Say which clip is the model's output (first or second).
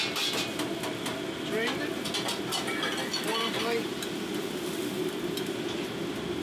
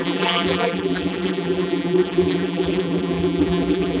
second